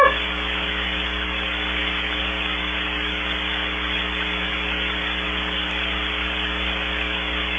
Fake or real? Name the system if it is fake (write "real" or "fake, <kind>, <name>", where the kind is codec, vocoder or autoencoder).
fake, codec, DAC